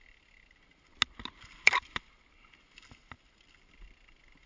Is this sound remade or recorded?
recorded